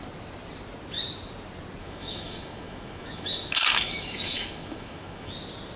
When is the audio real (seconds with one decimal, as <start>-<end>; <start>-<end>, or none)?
0.0-1.8; 5.3-5.8